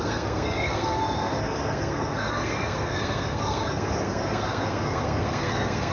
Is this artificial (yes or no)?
yes